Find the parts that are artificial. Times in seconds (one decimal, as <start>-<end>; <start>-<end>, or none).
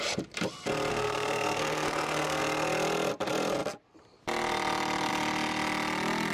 0.9-2.4